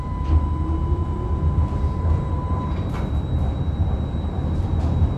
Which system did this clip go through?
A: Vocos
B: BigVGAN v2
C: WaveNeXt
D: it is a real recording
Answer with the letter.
B